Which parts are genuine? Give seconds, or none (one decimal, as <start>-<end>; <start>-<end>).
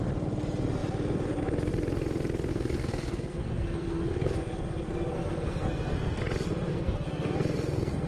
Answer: 0.0-2.5; 6.2-6.7